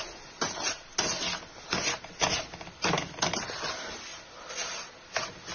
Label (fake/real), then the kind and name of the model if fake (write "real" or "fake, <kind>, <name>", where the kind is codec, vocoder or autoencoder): real